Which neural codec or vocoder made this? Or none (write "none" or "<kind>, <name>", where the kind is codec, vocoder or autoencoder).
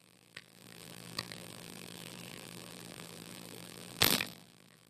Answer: vocoder, BigVGAN v2